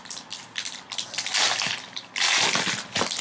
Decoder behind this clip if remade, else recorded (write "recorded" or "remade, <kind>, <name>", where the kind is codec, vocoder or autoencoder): recorded